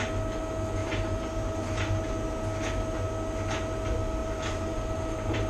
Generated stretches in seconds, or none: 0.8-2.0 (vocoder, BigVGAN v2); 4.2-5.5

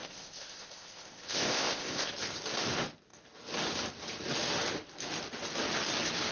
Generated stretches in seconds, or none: 0.0-2.1 (codec, ZipCodec)

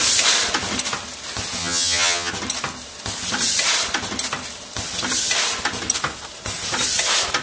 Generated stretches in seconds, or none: 1.6-2.3 (vocoder, HiFi-GAN)

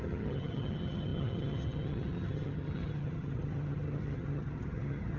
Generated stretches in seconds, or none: 0.0-5.2 (vocoder, HiFi-GAN)

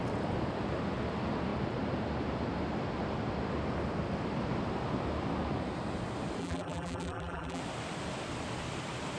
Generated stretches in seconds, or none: 6.4-7.6 (vocoder, BigVGAN v2)

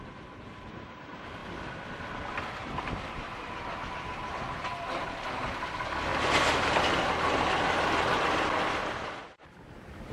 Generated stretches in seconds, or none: none

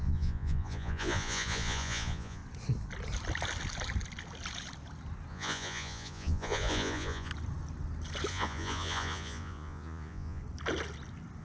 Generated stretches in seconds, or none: 0.0-2.4 (vocoder, Vocos); 5.3-7.3; 8.3-10.4